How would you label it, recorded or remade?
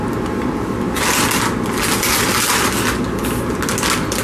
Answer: recorded